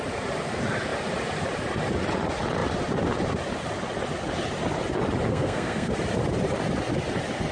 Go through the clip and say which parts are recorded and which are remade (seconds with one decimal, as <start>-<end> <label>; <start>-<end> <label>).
0.0-5.3 recorded; 5.3-5.9 remade; 5.9-7.5 recorded